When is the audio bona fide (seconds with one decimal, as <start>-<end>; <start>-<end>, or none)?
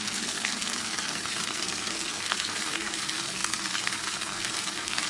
none